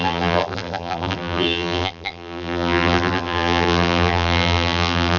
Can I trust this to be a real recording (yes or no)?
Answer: no